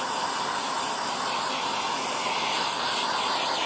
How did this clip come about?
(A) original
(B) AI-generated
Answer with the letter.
A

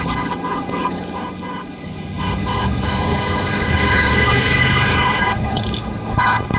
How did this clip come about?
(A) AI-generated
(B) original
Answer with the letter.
A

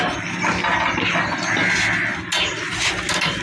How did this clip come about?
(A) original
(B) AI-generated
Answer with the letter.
A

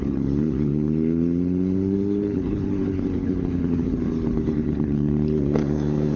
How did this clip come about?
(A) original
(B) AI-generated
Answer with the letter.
B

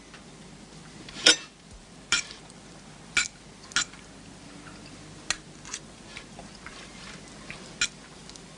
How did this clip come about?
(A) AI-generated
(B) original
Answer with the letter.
B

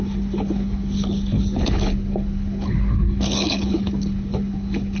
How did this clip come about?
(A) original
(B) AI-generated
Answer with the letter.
B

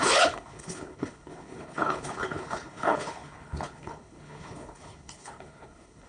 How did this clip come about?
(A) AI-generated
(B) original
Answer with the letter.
A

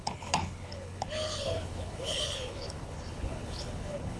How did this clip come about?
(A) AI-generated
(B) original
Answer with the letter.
A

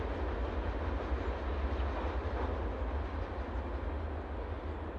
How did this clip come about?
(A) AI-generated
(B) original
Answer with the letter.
B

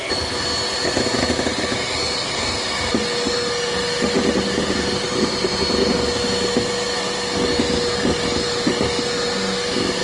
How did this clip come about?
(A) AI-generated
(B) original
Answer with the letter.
B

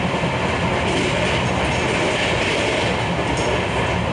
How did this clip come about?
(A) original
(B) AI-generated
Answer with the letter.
A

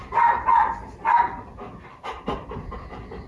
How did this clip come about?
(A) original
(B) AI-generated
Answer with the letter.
A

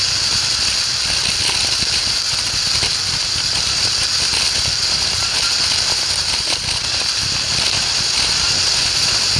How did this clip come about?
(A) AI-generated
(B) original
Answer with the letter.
B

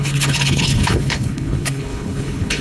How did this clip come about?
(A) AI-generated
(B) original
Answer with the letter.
A